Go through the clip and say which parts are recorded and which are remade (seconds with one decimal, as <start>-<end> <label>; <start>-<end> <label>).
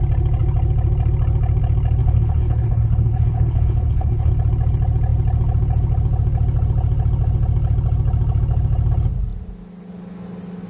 0.0-2.0 recorded; 2.0-4.3 remade; 4.3-10.7 recorded